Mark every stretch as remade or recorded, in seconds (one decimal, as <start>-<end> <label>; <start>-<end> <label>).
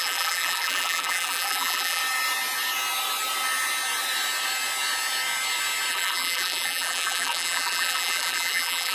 0.0-2.0 remade; 2.0-5.9 recorded; 5.9-8.9 remade